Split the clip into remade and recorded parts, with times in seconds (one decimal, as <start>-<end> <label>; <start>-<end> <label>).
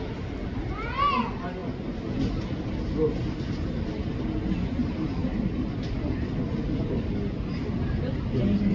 0.0-8.7 recorded